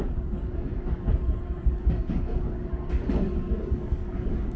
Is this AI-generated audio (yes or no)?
yes